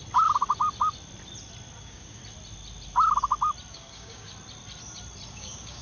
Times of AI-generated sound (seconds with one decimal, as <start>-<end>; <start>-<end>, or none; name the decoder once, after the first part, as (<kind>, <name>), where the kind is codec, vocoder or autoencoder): 1.8-2.2 (codec, DAC); 3.7-4.3; 5.3-5.8